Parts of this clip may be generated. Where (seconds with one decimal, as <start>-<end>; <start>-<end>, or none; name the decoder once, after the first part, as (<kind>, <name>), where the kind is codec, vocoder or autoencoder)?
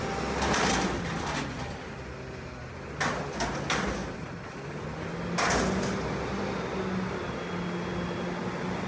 none